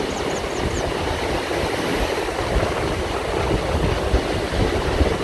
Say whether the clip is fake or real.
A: real